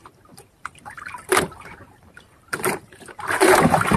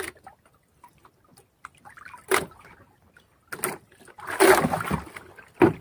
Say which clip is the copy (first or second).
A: first